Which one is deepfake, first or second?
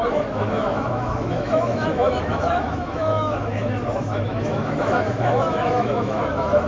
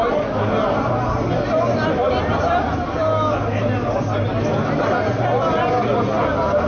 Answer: first